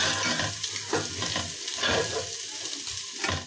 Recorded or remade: recorded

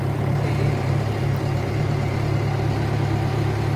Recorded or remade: remade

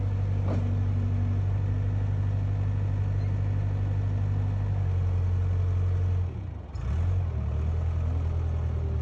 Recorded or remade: recorded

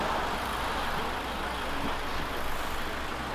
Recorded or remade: recorded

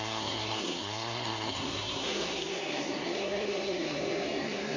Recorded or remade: remade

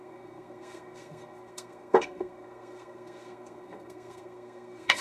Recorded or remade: remade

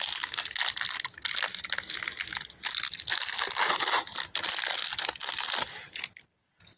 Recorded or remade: recorded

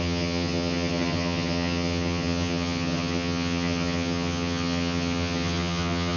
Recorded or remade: remade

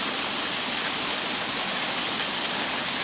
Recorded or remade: recorded